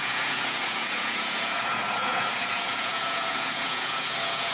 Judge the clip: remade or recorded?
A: remade